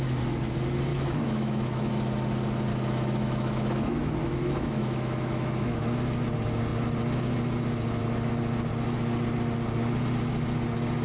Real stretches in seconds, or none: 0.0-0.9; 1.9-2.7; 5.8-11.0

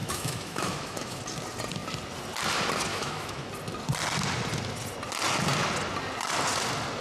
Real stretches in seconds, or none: 1.2-2.9; 3.5-7.0

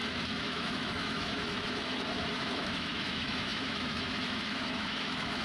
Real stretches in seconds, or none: none

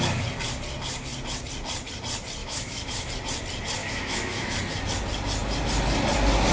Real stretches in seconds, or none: 0.0-2.4; 3.1-3.8; 4.6-6.5

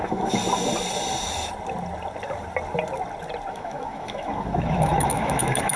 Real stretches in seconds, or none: 0.4-3.5

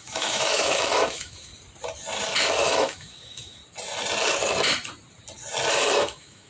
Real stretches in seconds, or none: 1.5-2.6; 3.6-5.7

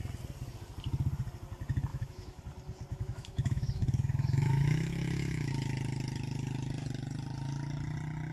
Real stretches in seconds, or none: 0.0-1.9; 2.4-2.9; 5.5-8.3

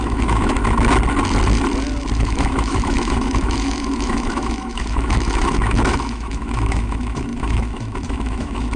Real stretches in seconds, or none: 0.6-2.2